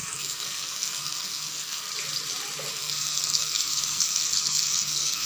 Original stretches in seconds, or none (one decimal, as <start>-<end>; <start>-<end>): 1.9-2.7